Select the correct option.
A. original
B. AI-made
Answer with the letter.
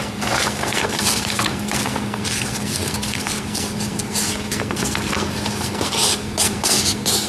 B